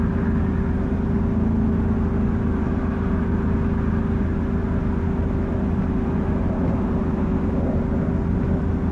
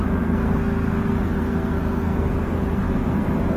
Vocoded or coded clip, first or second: second